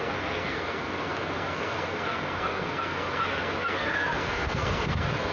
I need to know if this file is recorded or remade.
remade